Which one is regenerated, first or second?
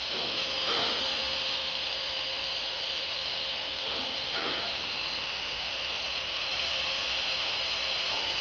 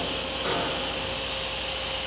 first